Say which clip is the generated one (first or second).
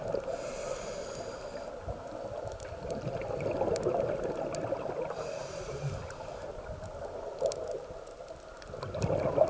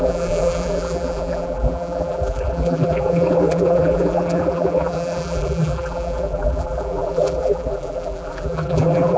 second